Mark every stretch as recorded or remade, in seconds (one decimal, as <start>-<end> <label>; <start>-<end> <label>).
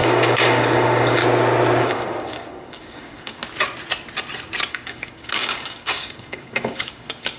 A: 0.0-1.2 remade; 1.2-1.8 recorded; 1.8-3.4 remade; 3.4-4.7 recorded; 4.7-7.4 remade